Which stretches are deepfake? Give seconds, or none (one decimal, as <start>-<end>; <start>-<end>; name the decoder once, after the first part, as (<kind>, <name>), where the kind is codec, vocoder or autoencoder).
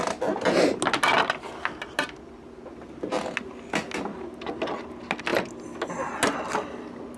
none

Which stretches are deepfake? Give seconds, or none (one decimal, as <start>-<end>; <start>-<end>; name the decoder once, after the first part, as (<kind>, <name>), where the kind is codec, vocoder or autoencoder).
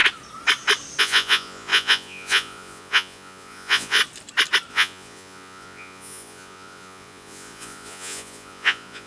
1.0-4.0 (vocoder, Vocos); 4.7-9.1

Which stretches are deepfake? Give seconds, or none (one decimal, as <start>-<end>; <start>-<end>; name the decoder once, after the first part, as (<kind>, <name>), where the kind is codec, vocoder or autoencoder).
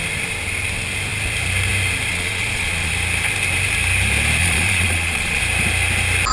2.1-2.9 (vocoder, Vocos); 4.4-5.4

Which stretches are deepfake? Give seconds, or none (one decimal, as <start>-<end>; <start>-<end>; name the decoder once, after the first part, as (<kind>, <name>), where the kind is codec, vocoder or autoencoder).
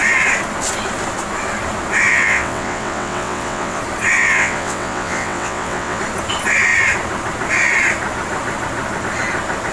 2.1-3.8 (vocoder, WaveNeXt); 4.2-6.0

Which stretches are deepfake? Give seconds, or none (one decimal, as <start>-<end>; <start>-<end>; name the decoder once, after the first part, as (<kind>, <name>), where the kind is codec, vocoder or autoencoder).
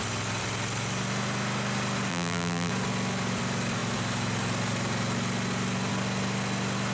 2.1-2.7 (vocoder, BigVGAN v2)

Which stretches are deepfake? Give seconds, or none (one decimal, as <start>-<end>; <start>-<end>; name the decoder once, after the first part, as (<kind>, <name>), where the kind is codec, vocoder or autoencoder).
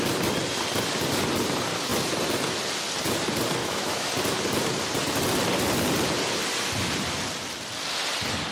3.6-4.1 (autoencoder, DAC-VAE)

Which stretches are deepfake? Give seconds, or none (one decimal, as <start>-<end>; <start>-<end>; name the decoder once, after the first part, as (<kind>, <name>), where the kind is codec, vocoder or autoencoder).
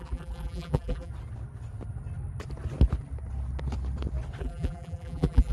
0.0-1.1 (vocoder, BigVGAN v2); 4.4-5.5